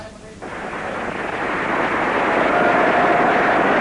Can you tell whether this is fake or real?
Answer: real